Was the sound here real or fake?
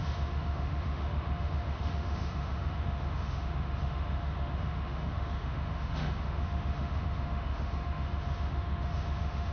fake